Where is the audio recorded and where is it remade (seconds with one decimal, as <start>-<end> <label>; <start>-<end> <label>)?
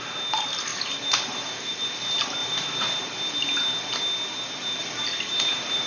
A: 0.0-0.7 recorded; 0.7-1.7 remade; 1.7-2.4 recorded; 2.4-3.0 remade; 3.0-4.8 recorded; 4.8-5.9 remade